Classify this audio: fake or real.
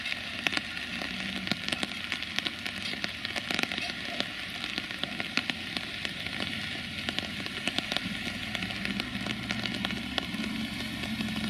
real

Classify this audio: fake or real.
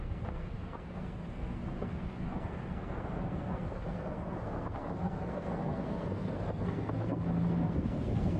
fake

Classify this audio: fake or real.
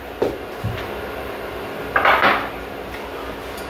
real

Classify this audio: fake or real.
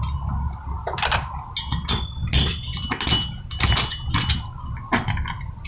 real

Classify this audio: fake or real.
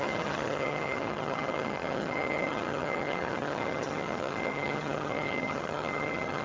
fake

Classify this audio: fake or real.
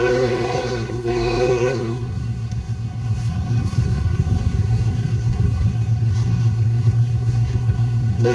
fake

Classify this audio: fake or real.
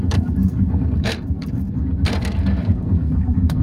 fake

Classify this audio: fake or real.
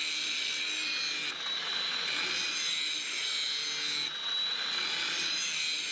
real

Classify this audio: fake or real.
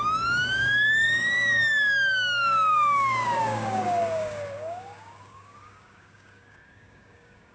fake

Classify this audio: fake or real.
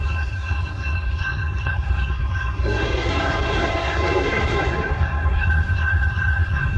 fake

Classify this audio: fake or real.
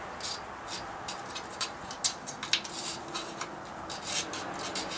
real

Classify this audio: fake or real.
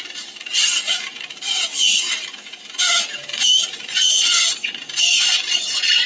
real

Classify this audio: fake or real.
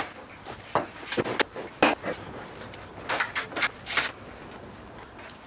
real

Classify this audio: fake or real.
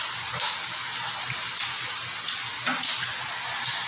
real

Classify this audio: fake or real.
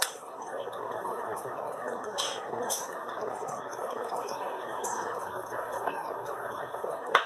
fake